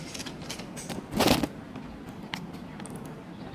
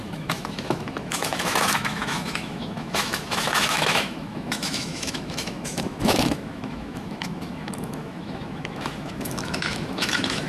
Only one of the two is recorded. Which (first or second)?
first